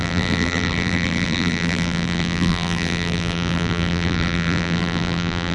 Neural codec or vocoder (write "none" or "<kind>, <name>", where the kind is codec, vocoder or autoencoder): vocoder, BigVGAN v2